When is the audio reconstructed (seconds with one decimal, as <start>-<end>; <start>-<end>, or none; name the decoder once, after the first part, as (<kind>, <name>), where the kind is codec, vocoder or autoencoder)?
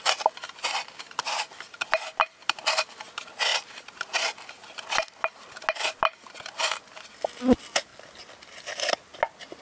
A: none